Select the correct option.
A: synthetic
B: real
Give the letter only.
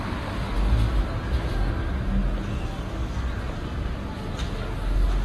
B